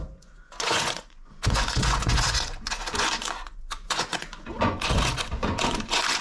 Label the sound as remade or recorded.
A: remade